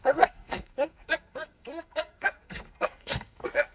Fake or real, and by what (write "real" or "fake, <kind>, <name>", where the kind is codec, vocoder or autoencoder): fake, codec, SNAC